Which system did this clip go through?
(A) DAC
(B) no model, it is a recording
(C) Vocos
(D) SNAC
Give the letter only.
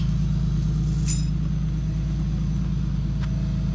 B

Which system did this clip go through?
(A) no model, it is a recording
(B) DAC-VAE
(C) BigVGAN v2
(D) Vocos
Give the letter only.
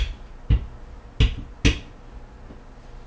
A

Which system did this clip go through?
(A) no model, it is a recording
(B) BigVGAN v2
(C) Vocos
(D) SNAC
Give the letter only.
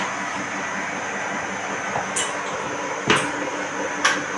A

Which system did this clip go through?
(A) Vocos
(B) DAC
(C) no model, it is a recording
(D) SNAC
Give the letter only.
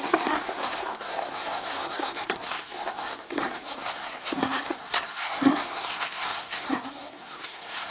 D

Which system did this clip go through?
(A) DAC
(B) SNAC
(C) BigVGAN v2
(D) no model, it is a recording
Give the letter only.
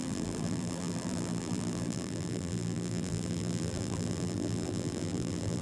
C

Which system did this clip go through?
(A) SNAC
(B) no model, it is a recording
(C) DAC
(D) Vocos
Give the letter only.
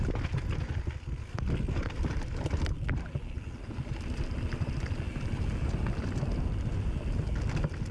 B